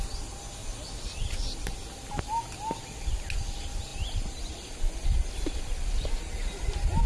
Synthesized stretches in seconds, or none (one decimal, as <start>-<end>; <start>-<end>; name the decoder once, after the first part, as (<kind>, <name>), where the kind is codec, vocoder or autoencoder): none

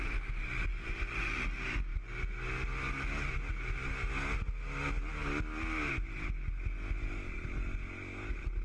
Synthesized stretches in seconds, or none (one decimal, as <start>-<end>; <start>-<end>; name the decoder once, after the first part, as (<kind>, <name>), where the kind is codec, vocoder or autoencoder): none

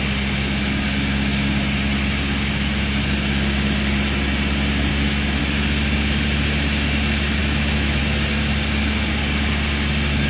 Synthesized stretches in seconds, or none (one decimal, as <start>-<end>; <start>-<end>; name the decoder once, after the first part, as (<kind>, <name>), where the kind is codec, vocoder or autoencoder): 4.9-5.4 (autoencoder, DAC-VAE); 7.4-8.0

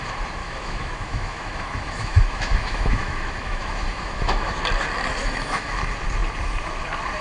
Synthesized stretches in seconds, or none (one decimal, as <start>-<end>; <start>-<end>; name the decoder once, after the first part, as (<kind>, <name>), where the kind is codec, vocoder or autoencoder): 0.4-4.5 (autoencoder, DAC-VAE); 5.2-5.8

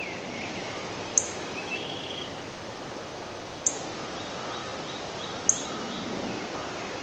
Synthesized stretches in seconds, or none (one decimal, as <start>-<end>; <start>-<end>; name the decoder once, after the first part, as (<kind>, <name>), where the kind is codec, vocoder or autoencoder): 1.1-3.7 (autoencoder, DAC-VAE)